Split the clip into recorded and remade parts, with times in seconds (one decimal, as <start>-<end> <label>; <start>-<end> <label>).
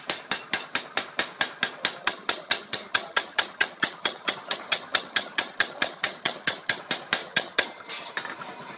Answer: 0.0-2.0 recorded; 2.0-6.8 remade; 6.8-7.2 recorded; 7.2-8.1 remade; 8.1-8.8 recorded